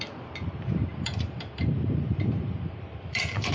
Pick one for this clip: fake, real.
fake